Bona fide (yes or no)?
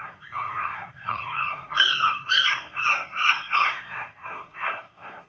no